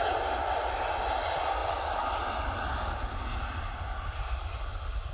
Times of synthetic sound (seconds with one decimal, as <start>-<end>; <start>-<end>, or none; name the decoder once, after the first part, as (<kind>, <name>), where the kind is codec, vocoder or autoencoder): none